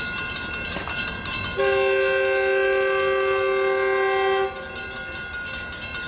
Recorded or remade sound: recorded